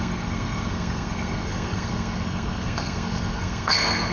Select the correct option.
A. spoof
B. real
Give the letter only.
A